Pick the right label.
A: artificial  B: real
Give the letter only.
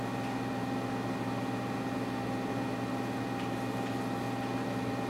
B